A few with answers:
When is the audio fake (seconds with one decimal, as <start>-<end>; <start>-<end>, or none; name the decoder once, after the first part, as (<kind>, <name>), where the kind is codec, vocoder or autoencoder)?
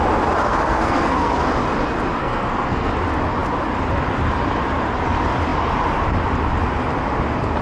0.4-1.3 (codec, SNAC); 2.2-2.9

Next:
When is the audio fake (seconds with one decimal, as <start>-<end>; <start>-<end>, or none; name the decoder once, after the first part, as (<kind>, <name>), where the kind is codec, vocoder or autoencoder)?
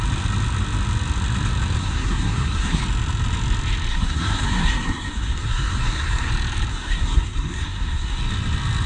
1.8-2.8 (codec, SNAC); 3.9-6.3; 6.7-8.2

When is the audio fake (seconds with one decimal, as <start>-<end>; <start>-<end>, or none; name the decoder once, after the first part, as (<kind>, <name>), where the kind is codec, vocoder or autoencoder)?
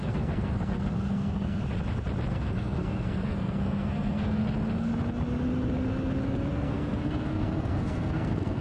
0.0-1.6 (codec, SNAC); 2.3-4.4; 6.5-8.6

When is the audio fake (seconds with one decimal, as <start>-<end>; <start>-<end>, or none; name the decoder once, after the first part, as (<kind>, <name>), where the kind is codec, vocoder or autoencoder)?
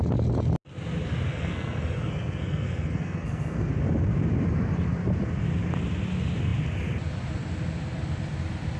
1.3-3.7 (codec, SNAC)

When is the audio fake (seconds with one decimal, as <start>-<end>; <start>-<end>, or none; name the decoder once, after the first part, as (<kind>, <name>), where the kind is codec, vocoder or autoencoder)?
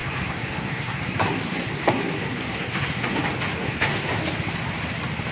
0.0-3.2 (codec, SNAC); 3.6-4.2